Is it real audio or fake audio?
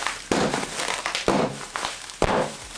fake